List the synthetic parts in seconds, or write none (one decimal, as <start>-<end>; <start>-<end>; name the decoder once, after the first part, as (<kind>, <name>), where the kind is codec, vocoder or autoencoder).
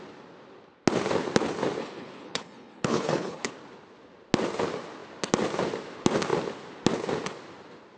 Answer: 1.8-3.5 (codec, HILCodec)